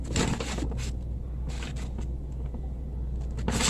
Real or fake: real